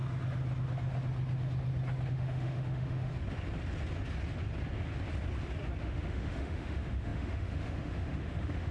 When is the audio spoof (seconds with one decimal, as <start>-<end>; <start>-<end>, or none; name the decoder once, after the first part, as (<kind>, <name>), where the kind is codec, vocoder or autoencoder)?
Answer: 2.1-3.1 (autoencoder, DAC-VAE); 5.8-8.7